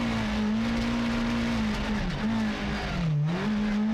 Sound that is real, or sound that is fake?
real